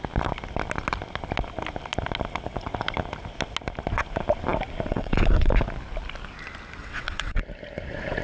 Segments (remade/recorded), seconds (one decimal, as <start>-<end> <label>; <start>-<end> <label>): 0.0-4.9 recorded; 4.9-5.5 remade; 5.5-6.8 recorded; 6.8-7.4 remade; 7.4-8.2 recorded